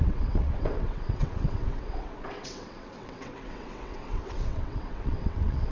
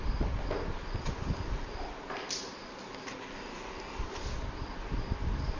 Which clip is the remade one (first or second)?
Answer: first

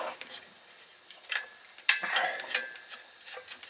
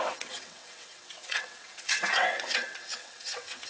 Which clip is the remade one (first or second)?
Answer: second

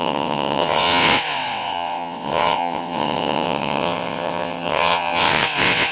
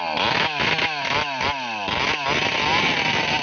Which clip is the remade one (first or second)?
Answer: first